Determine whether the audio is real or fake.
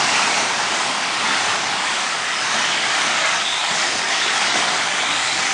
fake